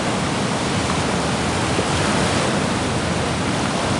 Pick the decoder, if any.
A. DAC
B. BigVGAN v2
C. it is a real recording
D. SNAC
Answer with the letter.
C